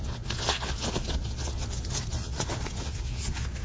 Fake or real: fake